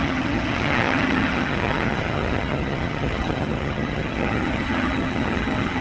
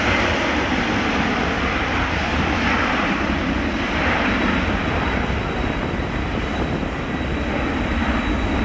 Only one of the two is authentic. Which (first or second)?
second